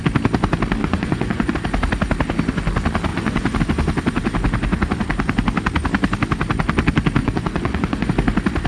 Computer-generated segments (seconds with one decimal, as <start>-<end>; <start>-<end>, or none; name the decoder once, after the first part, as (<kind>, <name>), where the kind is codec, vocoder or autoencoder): 0.8-1.5 (vocoder, Vocos); 3.1-3.6; 7.2-8.1